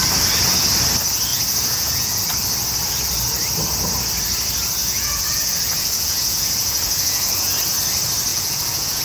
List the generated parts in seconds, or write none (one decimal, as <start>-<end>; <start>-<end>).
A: 1.3-2.2; 4.8-7.5; 8.3-9.0